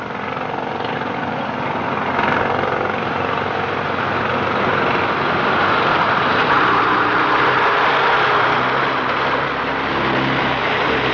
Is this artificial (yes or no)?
no